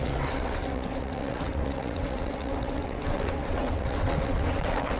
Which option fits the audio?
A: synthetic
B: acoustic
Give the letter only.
A